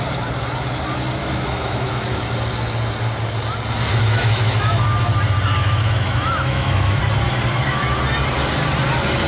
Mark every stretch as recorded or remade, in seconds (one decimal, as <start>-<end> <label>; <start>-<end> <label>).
0.0-1.2 recorded; 1.2-2.2 remade; 2.2-3.9 recorded; 3.9-4.8 remade; 4.8-5.6 recorded; 5.6-7.0 remade; 7.0-9.3 recorded